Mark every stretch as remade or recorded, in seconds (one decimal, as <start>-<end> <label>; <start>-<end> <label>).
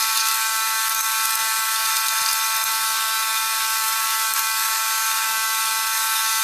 0.0-1.9 remade; 1.9-2.7 recorded; 2.7-6.4 remade